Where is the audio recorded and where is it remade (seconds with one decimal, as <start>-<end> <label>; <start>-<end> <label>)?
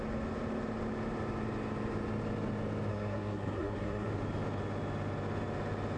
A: 0.0-2.9 recorded; 2.9-4.1 remade; 4.1-6.0 recorded